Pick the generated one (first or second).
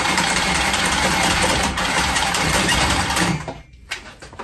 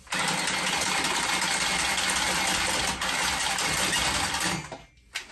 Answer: first